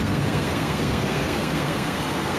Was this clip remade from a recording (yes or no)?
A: yes